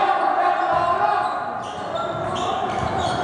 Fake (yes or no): no